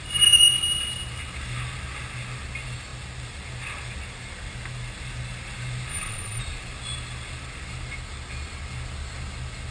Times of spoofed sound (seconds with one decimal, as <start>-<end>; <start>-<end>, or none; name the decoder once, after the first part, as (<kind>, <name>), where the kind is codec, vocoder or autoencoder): 5.9-6.4 (vocoder, Vocos)